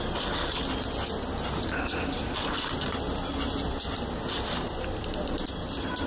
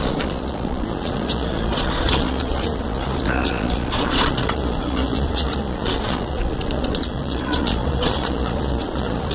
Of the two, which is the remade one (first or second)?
second